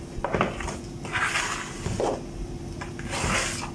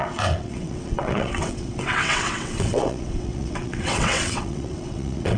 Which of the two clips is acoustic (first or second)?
first